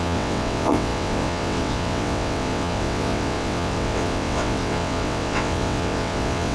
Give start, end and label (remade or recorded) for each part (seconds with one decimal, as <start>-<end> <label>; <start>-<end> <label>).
0.0-6.5 remade